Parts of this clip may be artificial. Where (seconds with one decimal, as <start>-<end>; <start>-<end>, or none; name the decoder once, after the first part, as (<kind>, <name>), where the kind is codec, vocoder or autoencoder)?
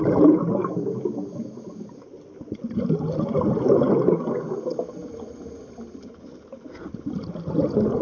none